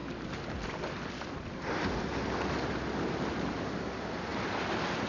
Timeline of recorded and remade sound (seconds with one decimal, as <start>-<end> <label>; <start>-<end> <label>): 0.0-5.1 recorded